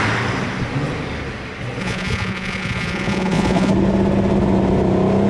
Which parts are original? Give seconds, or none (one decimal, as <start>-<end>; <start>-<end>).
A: 0.0-1.8; 3.7-5.3